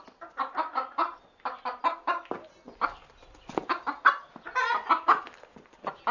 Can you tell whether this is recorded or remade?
recorded